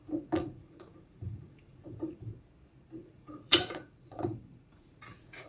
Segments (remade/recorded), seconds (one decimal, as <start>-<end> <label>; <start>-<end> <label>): 0.0-2.3 remade; 2.3-3.0 recorded; 3.0-5.5 remade